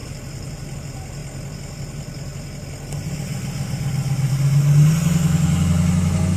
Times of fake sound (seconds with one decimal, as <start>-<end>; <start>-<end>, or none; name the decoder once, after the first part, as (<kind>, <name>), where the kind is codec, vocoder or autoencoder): 0.0-0.5 (vocoder, BigVGAN v2)

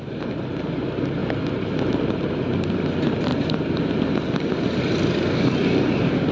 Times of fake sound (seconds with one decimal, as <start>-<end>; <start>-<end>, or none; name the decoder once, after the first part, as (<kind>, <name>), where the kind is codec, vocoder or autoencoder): 1.2-2.3 (vocoder, BigVGAN v2)

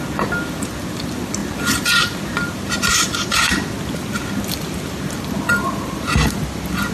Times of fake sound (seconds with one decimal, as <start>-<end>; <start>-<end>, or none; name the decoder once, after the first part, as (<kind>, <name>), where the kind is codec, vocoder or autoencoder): 1.4-3.5 (vocoder, BigVGAN v2)